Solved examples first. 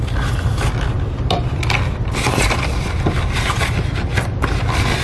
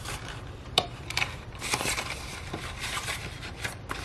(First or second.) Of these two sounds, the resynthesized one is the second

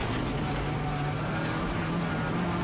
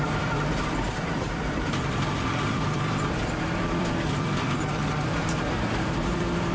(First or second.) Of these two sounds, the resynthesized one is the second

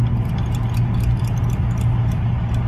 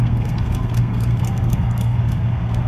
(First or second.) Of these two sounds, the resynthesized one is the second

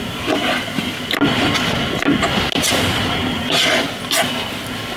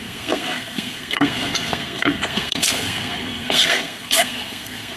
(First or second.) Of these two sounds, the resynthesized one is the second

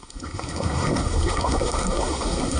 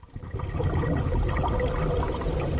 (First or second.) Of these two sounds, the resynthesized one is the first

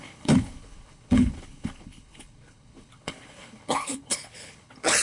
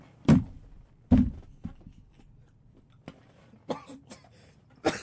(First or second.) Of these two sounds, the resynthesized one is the first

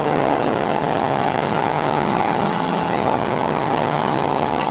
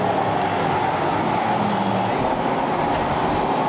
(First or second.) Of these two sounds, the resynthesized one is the first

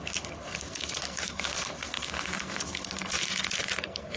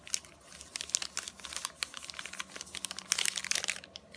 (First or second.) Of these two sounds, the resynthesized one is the first